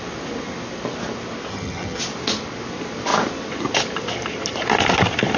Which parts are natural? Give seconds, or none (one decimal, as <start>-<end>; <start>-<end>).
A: 0.0-1.5; 2.0-5.4